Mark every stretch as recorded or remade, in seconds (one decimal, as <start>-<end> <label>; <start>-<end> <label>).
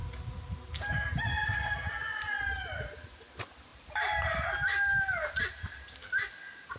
0.0-3.7 recorded; 3.7-5.4 remade; 5.4-6.8 recorded